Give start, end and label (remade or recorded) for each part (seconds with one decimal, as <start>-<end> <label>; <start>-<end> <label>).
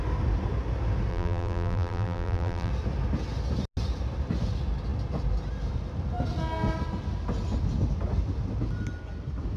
0.0-1.1 recorded; 1.1-2.7 remade; 2.7-9.6 recorded